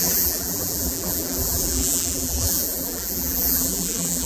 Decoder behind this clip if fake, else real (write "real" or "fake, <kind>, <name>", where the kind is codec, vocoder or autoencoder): fake, vocoder, BigVGAN v2